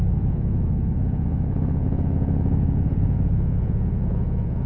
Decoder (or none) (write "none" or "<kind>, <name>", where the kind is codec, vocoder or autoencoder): vocoder, Vocos